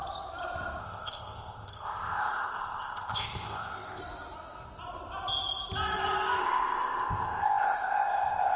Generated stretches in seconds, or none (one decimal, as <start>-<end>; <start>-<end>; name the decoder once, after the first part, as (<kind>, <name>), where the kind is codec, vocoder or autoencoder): 0.8-4.0 (codec, ZipCodec); 6.4-8.6